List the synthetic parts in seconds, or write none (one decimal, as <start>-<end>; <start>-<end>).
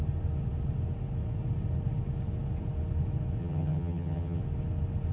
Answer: 3.4-4.4